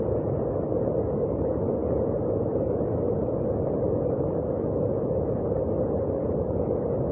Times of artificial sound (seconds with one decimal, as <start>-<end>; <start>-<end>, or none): none